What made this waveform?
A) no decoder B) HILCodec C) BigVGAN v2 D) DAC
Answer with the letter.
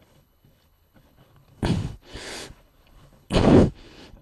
B